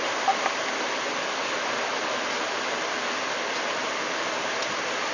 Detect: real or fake real